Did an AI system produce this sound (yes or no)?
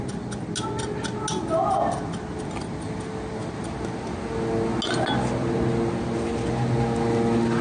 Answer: no